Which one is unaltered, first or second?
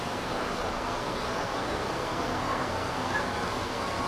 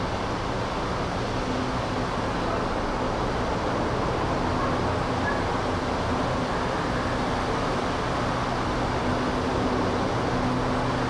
second